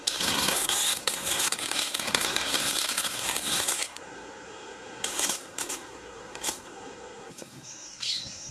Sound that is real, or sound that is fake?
fake